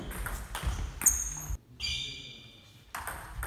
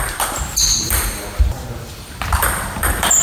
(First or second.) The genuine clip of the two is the first